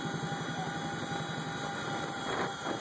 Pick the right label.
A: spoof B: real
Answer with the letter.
B